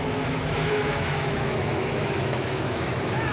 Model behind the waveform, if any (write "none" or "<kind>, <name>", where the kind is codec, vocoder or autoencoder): autoencoder, DAC-VAE